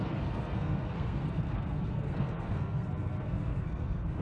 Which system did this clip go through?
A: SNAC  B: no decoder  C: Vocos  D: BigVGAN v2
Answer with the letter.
A